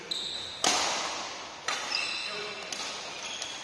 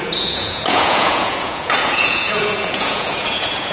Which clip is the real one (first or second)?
first